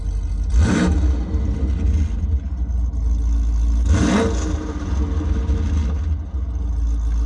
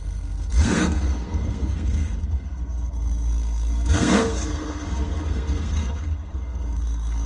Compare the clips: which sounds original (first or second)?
first